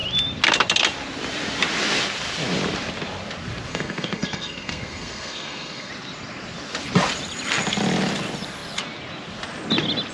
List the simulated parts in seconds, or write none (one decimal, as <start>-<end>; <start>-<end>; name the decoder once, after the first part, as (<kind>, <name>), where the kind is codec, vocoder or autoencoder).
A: 3.7-5.9 (codec, SNAC)